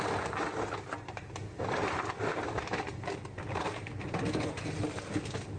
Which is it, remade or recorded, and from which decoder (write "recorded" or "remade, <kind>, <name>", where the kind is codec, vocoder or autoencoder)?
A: recorded